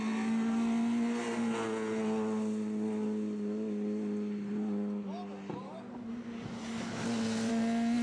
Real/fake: real